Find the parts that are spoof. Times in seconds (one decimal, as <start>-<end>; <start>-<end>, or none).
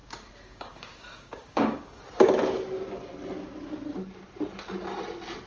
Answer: 0.0-2.0